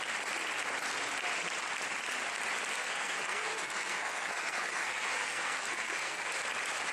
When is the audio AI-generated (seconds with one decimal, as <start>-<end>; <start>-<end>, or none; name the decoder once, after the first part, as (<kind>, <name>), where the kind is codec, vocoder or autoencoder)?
2.7-6.3 (codec, SNAC)